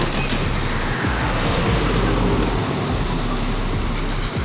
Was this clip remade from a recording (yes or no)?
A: no